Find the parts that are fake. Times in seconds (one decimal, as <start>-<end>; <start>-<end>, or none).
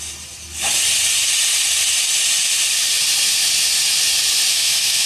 4.5-5.1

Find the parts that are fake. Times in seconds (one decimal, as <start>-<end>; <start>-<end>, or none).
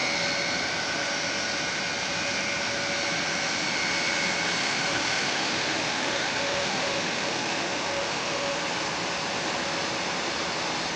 4.6-8.6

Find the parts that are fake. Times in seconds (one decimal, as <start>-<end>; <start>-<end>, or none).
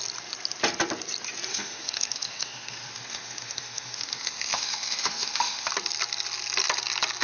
1.5-5.7